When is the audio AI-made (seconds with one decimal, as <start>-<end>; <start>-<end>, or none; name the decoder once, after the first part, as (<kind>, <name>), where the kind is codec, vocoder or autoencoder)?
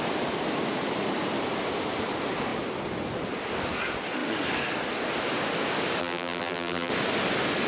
6.0-6.9 (vocoder, BigVGAN v2)